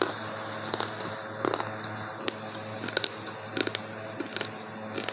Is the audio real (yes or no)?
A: yes